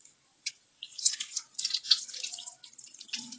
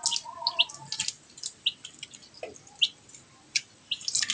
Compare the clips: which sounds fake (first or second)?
first